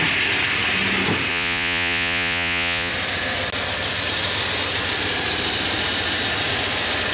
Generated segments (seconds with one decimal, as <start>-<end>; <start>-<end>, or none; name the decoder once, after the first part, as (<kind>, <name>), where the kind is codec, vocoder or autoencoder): 1.3-2.9 (vocoder, Vocos)